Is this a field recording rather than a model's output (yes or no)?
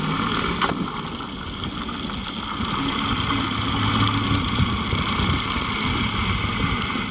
yes